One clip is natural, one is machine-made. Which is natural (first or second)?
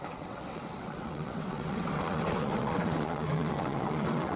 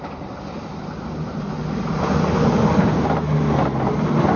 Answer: second